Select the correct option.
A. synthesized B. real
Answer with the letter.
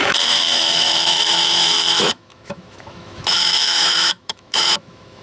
A